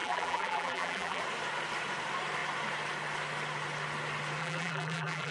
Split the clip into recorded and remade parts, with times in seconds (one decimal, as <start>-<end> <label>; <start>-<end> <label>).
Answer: 0.0-1.2 remade; 1.2-4.4 recorded; 4.4-5.3 remade